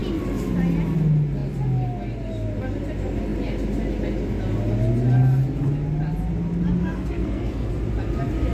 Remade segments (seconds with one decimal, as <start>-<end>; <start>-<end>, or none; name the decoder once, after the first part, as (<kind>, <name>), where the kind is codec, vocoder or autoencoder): 6.8-7.7 (codec, SNAC)